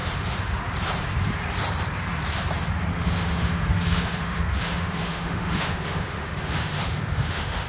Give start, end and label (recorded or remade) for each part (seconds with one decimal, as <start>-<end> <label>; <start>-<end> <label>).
0.0-0.6 remade; 0.6-2.9 recorded; 2.9-7.7 remade